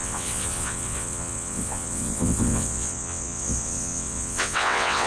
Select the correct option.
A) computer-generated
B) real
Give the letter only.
A